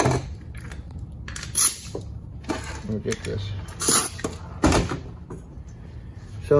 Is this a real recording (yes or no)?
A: yes